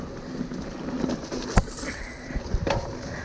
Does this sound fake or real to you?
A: real